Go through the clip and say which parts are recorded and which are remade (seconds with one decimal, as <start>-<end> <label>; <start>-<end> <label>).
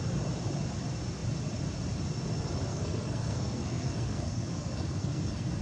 0.0-2.7 recorded; 2.7-5.6 remade